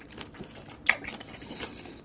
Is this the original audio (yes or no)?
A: yes